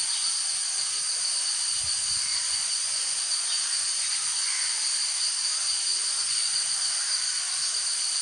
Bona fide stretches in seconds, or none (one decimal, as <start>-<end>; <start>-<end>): 0.0-2.3; 4.7-5.9; 6.6-8.2